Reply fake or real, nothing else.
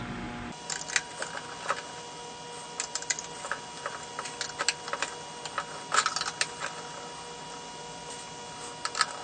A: real